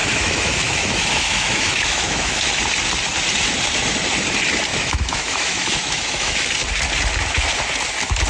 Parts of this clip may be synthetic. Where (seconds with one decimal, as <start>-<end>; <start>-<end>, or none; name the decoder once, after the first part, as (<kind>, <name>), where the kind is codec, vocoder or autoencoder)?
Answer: 0.0-2.6 (autoencoder, DAC-VAE); 4.7-6.5